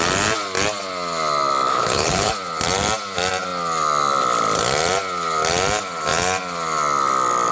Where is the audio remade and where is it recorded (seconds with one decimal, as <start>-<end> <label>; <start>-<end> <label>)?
0.0-1.7 recorded; 1.7-2.3 remade; 2.3-7.5 recorded